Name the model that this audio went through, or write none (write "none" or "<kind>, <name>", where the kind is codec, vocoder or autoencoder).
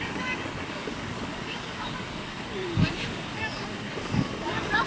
codec, DAC